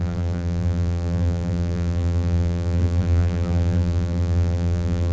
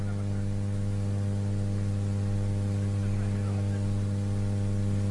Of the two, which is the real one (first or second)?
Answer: second